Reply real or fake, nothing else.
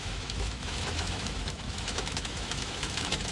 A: fake